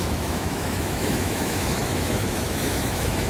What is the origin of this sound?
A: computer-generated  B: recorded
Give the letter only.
A